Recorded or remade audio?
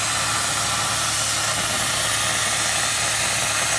recorded